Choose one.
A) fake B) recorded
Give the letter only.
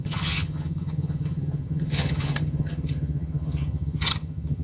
A